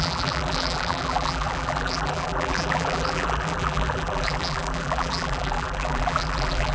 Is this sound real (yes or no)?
no